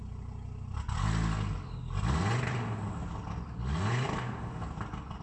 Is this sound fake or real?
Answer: real